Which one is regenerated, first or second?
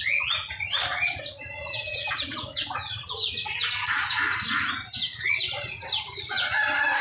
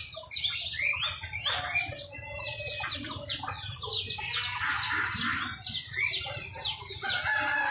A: first